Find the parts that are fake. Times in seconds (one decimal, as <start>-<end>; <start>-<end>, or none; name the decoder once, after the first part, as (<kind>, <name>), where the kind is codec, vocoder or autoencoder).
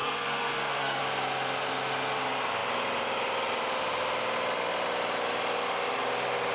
0.0-1.0 (codec, SNAC)